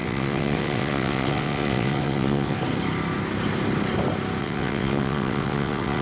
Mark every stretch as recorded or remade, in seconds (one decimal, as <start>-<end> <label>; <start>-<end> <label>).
0.0-2.6 remade; 2.6-4.4 recorded; 4.4-6.0 remade